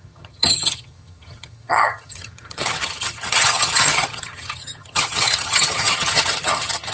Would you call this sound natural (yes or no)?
no